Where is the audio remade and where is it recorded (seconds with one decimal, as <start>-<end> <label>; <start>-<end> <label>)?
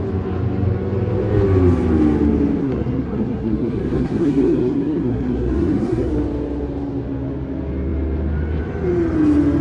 0.0-2.6 recorded; 2.6-6.1 remade; 6.1-9.6 recorded